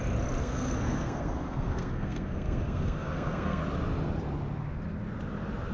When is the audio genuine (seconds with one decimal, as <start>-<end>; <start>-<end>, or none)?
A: 0.0-0.4; 3.6-5.7